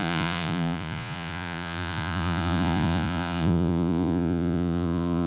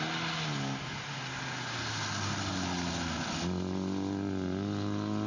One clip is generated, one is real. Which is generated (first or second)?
first